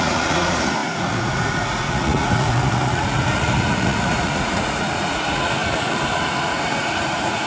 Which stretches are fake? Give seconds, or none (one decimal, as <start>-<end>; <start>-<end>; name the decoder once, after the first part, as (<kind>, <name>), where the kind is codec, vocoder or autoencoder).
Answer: 0.0-7.5 (vocoder, Vocos)